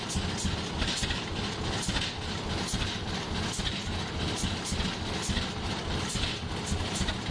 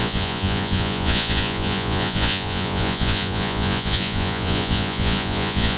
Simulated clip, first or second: second